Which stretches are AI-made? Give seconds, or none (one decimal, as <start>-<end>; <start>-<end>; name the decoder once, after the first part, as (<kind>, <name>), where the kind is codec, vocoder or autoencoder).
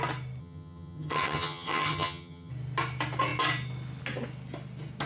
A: 0.4-2.5 (vocoder, HiFi-GAN)